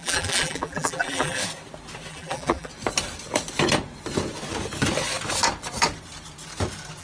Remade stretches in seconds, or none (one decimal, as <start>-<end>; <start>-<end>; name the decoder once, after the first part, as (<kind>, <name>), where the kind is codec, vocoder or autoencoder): 0.0-1.4 (vocoder, BigVGAN v2); 2.1-2.7